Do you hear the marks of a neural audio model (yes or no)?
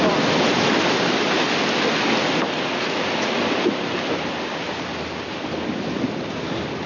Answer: no